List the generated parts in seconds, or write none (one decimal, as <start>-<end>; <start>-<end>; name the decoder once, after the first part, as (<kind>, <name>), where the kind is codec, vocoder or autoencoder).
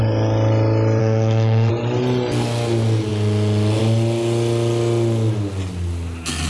1.0-1.7 (autoencoder, DAC-VAE)